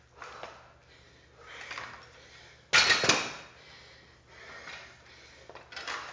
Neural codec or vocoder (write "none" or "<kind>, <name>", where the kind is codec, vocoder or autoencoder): none